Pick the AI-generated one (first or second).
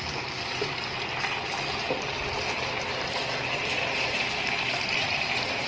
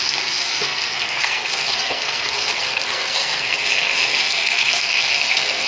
second